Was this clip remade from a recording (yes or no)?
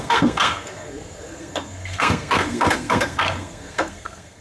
yes